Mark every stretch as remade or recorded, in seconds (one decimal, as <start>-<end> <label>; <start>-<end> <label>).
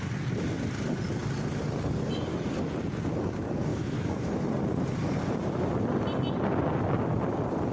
0.0-3.7 recorded; 3.7-4.3 remade; 4.3-7.7 recorded